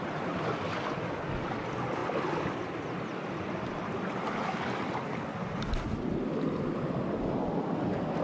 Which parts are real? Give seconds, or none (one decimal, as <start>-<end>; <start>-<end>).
0.0-8.2